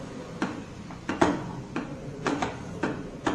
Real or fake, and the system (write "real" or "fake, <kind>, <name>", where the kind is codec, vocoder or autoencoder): fake, vocoder, Vocos